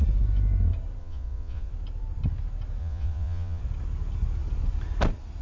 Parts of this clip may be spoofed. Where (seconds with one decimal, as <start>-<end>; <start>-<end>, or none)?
1.0-1.7; 2.8-3.6